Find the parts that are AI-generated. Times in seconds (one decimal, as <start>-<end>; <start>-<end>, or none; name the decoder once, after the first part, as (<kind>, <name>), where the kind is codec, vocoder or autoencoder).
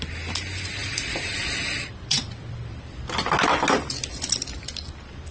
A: 0.8-3.3 (vocoder, BigVGAN v2)